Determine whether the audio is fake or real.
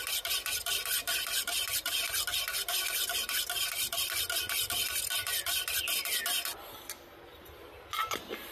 real